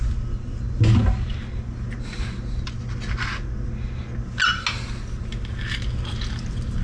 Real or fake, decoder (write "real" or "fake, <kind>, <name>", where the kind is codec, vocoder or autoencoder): real